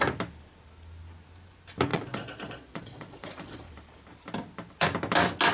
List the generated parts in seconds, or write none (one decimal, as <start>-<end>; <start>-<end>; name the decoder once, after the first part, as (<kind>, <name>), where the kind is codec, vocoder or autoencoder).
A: 1.9-3.7 (vocoder, Vocos)